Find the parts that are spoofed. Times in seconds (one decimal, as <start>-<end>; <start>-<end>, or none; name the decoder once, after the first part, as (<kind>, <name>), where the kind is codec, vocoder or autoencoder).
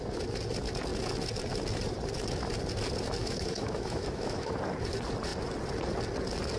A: 3.2-4.5 (autoencoder, DAC-VAE)